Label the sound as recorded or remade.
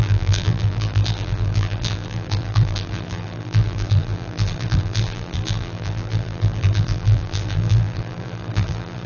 remade